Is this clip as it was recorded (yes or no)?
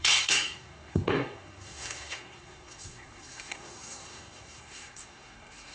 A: no